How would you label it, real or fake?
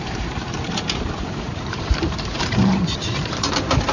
fake